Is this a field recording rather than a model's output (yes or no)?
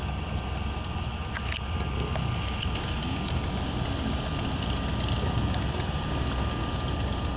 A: yes